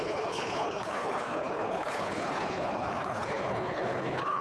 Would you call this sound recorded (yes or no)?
no